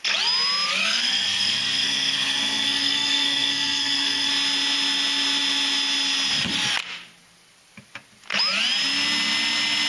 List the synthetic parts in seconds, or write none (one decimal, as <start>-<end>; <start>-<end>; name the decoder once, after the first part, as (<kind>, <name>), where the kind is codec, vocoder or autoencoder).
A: 0.8-4.3 (codec, SNAC)